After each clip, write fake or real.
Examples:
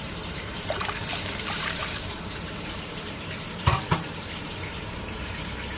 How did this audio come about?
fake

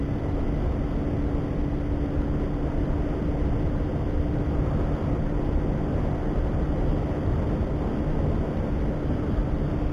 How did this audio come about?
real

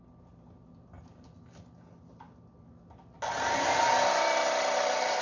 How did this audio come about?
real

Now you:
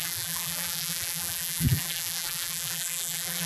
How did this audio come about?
fake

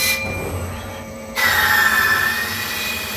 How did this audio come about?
real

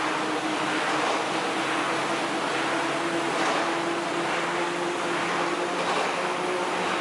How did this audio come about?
real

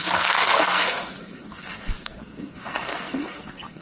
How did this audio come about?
fake